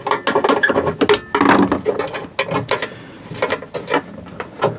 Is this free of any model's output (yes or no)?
yes